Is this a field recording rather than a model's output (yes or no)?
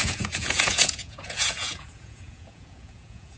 no